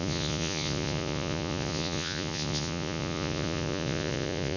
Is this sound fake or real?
fake